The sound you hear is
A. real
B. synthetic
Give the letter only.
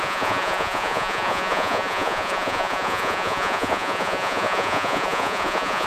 B